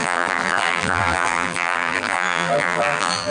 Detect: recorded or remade remade